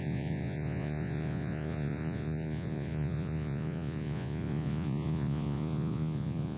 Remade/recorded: remade